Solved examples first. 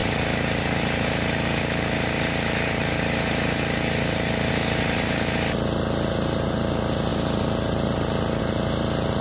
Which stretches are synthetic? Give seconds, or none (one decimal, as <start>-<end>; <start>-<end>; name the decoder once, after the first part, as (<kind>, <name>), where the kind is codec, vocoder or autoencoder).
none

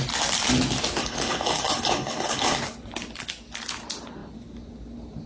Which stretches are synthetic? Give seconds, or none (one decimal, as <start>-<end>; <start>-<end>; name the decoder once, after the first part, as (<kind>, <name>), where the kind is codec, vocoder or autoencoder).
1.0-2.6 (codec, HILCodec)

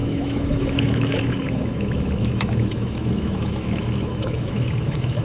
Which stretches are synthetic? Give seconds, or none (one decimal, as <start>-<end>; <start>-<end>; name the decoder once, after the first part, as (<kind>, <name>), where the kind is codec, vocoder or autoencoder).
0.0-5.2 (autoencoder, DAC-VAE)

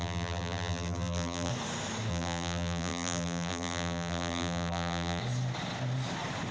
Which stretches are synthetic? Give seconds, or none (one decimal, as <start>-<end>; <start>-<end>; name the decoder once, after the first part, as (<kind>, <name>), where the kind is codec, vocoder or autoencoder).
0.0-1.5 (vocoder, BigVGAN v2); 2.1-5.2

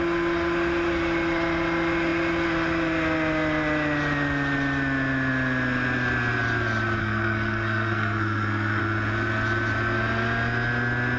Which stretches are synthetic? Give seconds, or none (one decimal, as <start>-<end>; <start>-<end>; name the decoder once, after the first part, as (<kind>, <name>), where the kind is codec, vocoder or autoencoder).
7.0-8.8 (codec, SNAC)

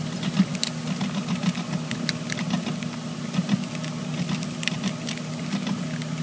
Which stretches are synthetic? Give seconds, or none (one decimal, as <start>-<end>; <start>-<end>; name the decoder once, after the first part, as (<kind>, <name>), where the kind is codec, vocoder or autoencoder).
none